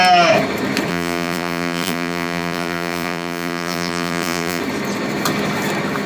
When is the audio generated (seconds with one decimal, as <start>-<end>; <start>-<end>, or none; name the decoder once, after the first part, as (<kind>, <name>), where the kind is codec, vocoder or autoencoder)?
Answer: 0.9-4.6 (vocoder, BigVGAN v2)